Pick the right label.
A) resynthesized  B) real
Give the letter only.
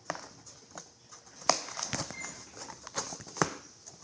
B